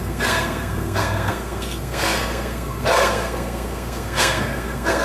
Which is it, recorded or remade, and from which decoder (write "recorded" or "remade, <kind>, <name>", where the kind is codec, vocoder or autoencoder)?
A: remade, codec, SNAC